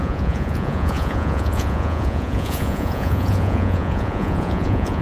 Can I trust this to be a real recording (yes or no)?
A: no